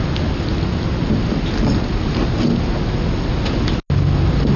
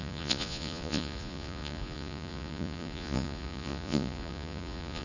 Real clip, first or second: first